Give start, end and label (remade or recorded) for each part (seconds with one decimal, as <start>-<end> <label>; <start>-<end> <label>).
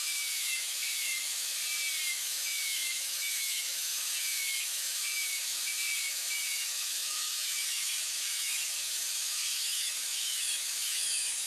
0.0-1.6 remade; 1.6-2.1 recorded; 2.1-11.5 remade